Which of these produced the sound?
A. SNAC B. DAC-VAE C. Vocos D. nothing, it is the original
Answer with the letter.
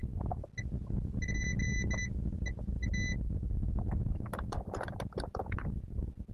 D